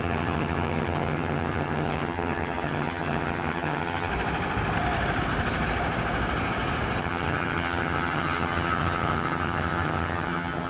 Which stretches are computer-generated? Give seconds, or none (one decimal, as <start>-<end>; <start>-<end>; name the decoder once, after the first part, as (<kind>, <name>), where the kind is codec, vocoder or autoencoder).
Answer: 0.0-4.1 (vocoder, HiFi-GAN); 7.0-10.7